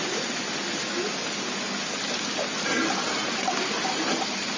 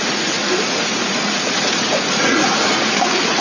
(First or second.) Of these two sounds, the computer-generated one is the second